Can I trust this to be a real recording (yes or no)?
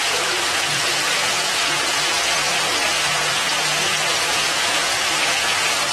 no